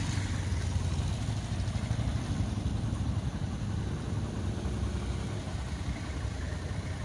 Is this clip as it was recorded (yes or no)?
yes